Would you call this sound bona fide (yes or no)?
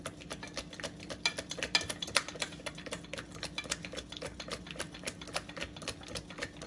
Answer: yes